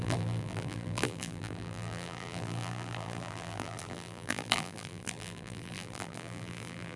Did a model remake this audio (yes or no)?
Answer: yes